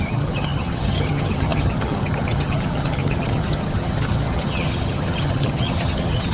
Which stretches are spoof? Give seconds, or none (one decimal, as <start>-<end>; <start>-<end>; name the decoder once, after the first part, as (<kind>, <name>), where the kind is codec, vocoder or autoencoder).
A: 0.0-6.3 (vocoder, HiFi-GAN)